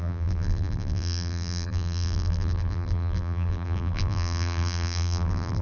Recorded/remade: remade